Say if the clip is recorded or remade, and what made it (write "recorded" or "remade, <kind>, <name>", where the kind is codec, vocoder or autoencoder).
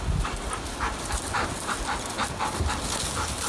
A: recorded